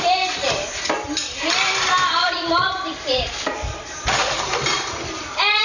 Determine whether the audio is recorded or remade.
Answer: remade